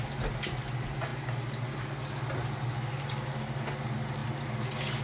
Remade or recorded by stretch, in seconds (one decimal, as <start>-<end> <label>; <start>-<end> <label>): 0.0-5.0 recorded